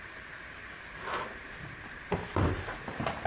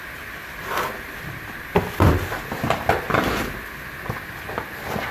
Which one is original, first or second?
second